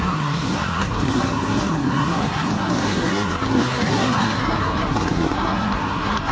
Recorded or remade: remade